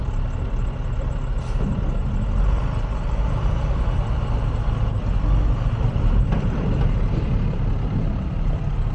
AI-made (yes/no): no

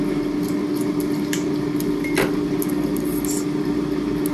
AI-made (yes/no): no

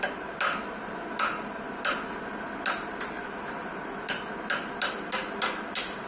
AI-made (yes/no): no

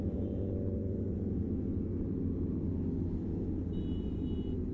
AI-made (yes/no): no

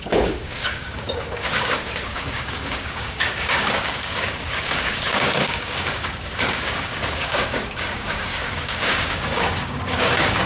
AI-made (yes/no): yes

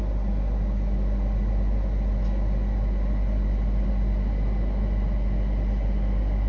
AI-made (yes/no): no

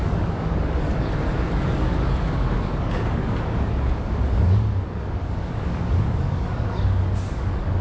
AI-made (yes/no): yes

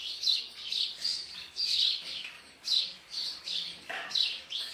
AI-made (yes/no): yes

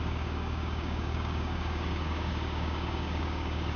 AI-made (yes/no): yes